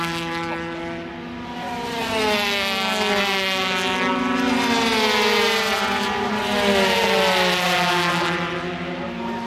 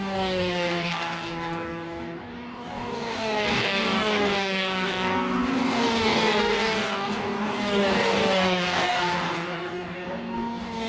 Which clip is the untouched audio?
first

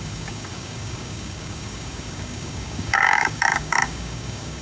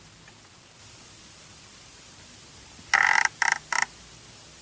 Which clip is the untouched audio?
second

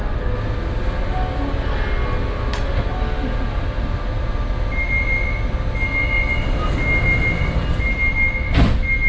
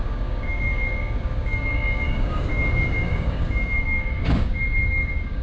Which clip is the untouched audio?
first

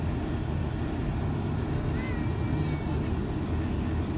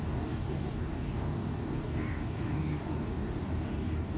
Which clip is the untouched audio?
first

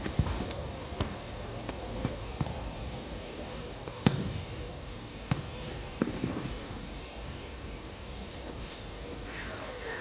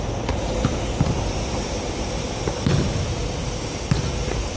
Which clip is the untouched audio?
second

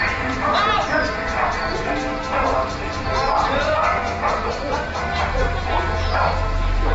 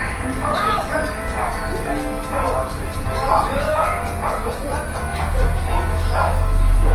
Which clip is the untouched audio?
first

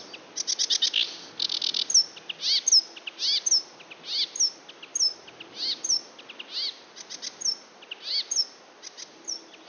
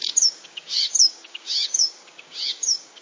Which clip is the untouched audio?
first